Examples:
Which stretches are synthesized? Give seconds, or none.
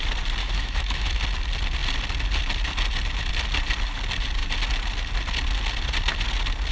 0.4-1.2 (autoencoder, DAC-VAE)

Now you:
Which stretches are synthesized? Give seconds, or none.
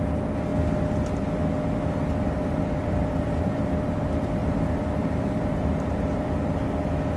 2.4-3.7 (vocoder, BigVGAN v2); 4.4-6.3